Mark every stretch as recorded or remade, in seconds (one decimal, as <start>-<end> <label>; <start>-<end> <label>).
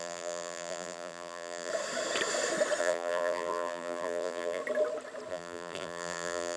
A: 0.0-1.7 remade; 1.7-2.8 recorded; 2.8-4.6 remade; 4.6-5.3 recorded; 5.3-6.6 remade